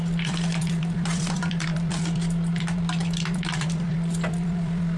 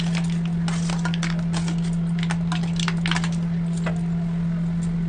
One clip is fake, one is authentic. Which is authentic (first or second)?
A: second